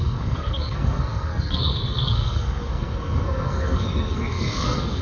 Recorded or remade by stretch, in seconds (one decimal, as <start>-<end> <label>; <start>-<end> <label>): 0.0-5.0 remade